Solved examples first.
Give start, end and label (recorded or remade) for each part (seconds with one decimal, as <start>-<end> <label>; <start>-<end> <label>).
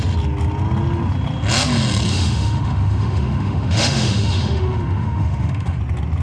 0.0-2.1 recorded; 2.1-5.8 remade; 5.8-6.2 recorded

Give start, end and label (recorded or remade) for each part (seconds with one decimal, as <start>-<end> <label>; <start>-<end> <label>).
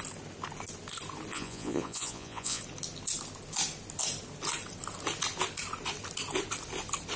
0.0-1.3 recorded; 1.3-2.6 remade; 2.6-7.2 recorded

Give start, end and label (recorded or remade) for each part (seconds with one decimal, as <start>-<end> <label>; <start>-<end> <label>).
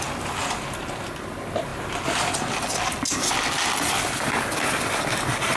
0.0-5.6 recorded